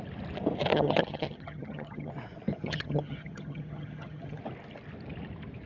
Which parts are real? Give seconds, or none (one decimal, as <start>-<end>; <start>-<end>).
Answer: 0.0-0.7; 2.1-2.5; 4.4-5.7